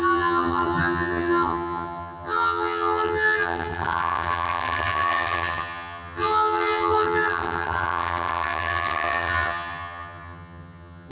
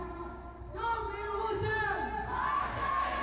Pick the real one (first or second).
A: second